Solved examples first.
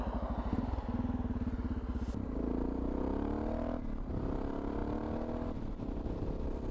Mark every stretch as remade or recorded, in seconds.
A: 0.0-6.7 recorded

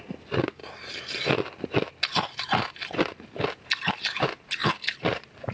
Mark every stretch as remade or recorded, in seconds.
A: 0.0-5.5 recorded

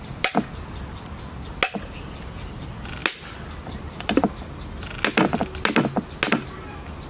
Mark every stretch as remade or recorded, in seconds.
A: 0.0-7.1 recorded

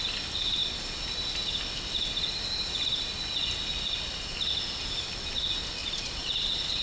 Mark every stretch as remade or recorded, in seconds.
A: 0.0-5.8 recorded; 5.8-6.8 remade

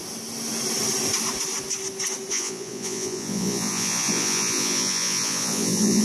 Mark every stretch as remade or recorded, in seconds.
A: 0.0-2.3 recorded; 2.3-6.0 remade